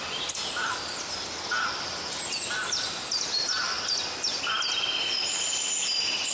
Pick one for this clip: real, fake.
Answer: real